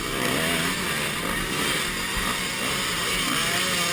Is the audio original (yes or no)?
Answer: yes